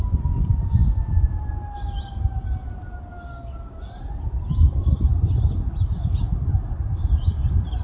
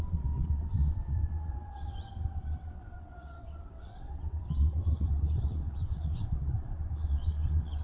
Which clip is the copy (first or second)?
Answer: second